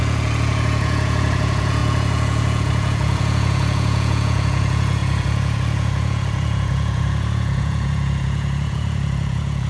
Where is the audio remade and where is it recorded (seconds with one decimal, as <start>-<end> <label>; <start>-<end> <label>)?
0.0-9.7 remade